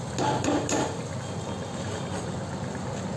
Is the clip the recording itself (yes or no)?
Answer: yes